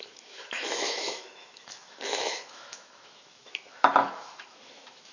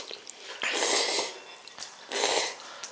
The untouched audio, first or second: second